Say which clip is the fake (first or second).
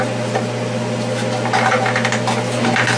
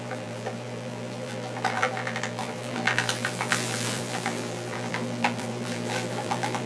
second